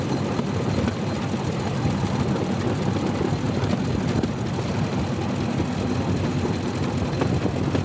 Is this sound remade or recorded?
recorded